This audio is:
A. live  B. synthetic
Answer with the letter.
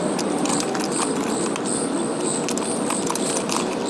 A